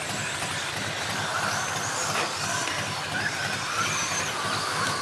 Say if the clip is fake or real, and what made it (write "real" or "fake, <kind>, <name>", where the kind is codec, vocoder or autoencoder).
real